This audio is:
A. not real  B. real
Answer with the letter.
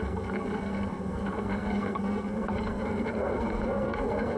A